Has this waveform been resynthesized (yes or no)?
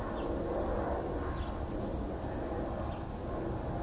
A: no